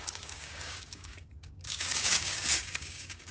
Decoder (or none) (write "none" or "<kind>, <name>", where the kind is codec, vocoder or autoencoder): codec, DAC